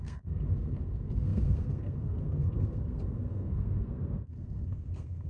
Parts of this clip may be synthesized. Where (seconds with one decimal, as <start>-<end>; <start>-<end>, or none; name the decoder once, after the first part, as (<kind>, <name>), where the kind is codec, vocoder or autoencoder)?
0.0-5.3 (codec, SNAC)